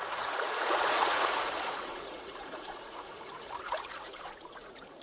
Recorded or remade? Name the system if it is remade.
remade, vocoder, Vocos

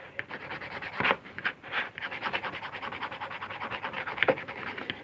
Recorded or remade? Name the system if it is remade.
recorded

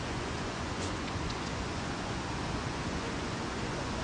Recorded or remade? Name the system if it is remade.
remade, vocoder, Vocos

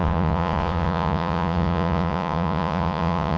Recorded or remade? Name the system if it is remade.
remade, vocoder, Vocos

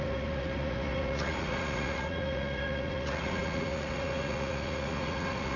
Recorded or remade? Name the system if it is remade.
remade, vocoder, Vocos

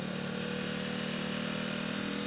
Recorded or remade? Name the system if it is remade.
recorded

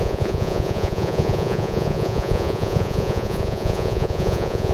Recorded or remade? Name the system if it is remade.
remade, vocoder, Vocos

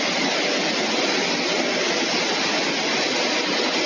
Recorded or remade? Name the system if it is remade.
recorded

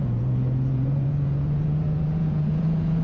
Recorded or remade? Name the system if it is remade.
remade, vocoder, Vocos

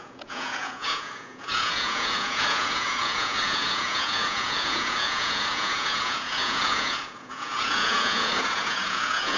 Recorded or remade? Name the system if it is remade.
remade, vocoder, Vocos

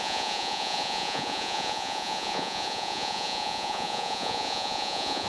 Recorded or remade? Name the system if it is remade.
remade, vocoder, Vocos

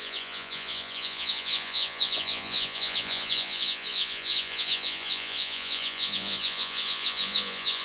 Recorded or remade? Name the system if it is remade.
remade, vocoder, Vocos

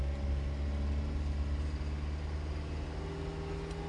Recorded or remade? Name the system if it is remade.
recorded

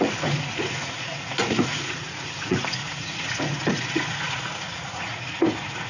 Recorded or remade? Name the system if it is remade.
remade, vocoder, Vocos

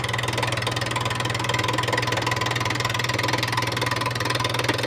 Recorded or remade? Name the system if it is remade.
recorded